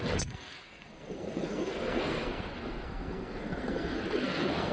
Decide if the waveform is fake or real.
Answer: fake